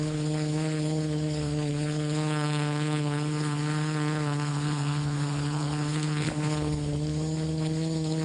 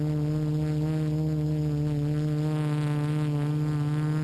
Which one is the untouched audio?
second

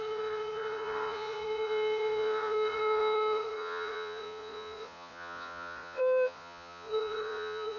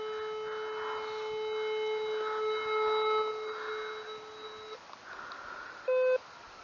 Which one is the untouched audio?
second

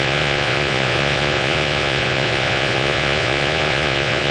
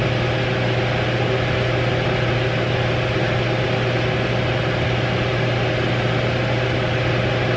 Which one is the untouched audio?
second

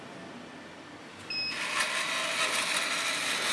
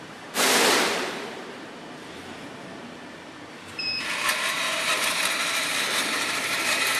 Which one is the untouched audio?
first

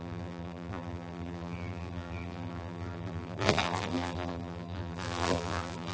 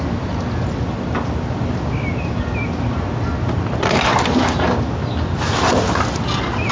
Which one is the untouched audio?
second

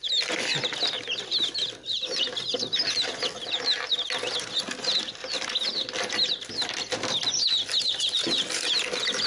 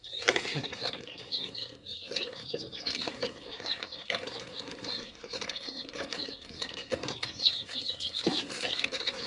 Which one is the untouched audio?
first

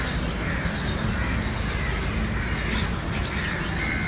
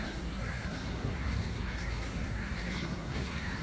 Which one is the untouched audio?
first